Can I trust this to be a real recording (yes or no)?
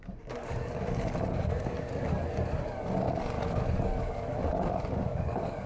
no